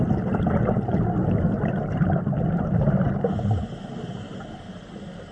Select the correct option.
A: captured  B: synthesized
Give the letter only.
A